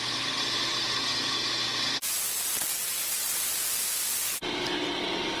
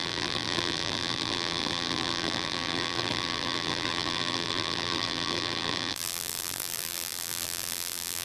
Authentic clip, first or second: first